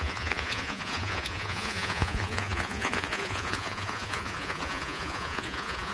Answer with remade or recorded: remade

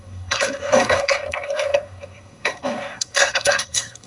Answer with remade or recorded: remade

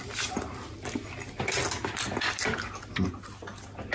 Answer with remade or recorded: recorded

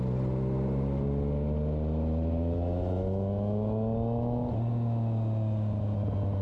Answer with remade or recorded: recorded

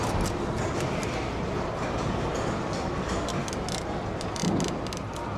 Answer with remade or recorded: recorded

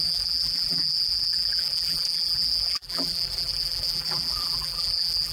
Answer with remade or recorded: remade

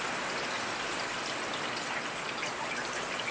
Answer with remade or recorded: recorded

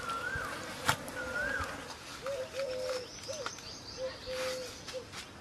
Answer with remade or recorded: recorded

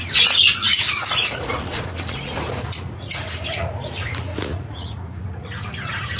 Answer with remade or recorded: remade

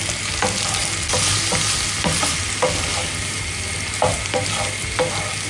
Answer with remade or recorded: recorded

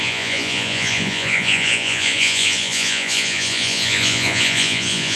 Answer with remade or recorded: remade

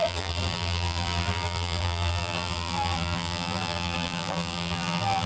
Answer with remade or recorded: remade